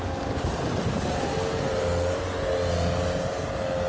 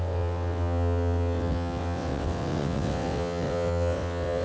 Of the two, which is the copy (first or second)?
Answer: second